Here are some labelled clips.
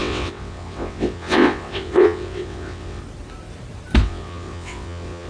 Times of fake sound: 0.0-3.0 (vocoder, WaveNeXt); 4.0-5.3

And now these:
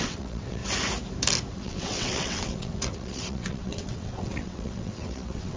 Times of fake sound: 0.0-0.6 (vocoder, WaveNeXt); 1.5-5.6

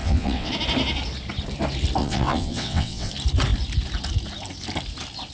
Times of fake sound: 0.0-0.5 (vocoder, WaveNeXt); 2.0-3.1

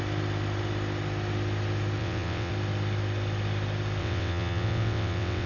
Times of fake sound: 2.0-2.5 (vocoder, WaveNeXt); 4.0-5.5